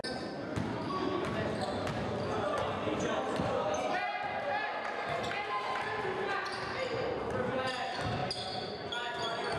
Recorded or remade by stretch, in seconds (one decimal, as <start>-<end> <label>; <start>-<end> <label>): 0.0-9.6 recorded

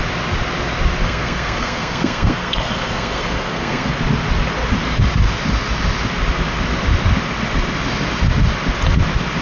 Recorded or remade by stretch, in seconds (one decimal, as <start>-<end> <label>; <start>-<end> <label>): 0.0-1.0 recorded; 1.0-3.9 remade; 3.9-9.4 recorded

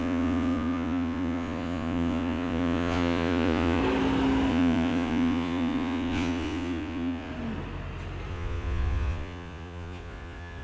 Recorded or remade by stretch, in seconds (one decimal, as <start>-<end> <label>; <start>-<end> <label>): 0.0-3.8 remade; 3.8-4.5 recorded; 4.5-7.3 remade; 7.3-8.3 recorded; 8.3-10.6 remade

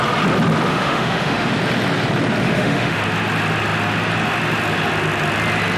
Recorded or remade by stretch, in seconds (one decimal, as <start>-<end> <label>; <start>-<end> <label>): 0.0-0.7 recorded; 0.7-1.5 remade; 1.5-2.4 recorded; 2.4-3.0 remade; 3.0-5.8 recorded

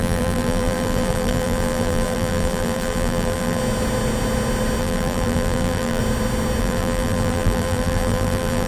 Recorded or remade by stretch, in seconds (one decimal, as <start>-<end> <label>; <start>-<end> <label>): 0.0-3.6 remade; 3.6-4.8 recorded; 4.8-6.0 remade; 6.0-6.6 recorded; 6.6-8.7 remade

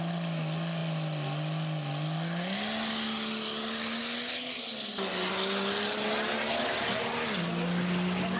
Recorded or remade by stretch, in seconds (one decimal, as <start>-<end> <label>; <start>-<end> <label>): 0.0-8.4 recorded

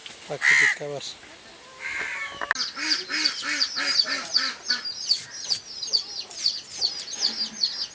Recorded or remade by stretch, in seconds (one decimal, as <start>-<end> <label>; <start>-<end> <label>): 0.0-7.9 recorded

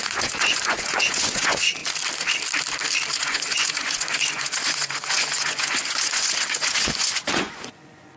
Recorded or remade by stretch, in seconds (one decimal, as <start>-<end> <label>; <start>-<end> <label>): 0.0-1.8 remade; 1.8-3.1 recorded; 3.1-8.2 remade